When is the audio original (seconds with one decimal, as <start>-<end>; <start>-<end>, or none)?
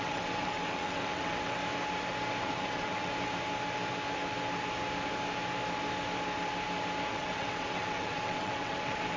1.6-2.4; 3.1-7.1